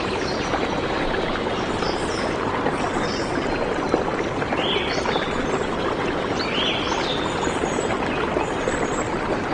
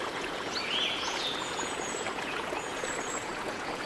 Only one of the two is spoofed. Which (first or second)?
second